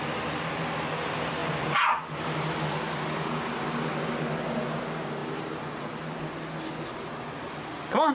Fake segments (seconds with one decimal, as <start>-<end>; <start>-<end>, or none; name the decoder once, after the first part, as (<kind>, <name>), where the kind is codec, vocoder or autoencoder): none